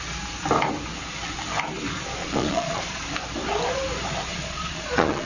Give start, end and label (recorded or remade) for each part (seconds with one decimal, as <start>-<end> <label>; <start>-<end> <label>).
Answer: 0.0-2.2 recorded; 2.2-3.0 remade; 3.0-4.3 recorded; 4.3-5.3 remade